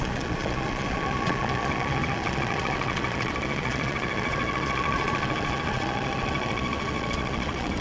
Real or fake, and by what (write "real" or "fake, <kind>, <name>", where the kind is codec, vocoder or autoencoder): fake, vocoder, Vocos